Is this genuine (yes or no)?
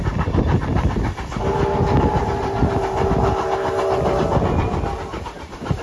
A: yes